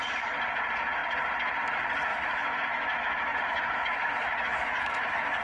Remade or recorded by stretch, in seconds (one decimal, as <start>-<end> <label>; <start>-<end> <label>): 0.0-2.1 recorded; 2.1-5.4 remade